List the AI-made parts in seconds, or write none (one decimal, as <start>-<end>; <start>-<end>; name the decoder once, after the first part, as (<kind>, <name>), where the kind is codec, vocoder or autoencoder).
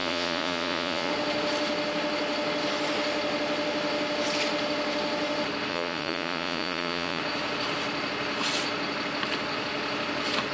0.0-1.1 (vocoder, Vocos); 5.7-7.2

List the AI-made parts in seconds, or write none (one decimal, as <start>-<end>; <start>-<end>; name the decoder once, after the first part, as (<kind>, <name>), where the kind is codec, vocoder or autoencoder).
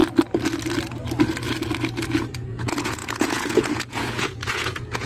2.3-5.1 (vocoder, Vocos)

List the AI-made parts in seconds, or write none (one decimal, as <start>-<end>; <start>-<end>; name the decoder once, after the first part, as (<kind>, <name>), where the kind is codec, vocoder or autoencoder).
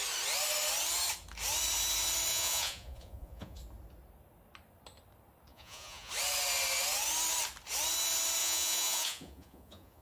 2.3-3.6 (vocoder, Vocos); 5.5-6.1; 8.4-10.0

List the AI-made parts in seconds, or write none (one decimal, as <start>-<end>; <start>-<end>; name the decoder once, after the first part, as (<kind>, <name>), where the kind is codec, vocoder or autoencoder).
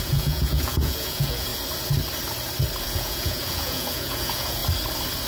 0.0-1.5 (vocoder, Vocos); 2.8-4.6